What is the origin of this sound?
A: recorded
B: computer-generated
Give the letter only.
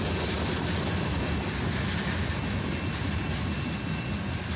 A